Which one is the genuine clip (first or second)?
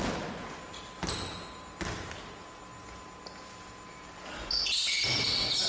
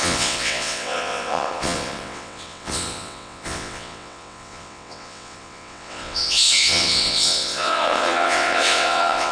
first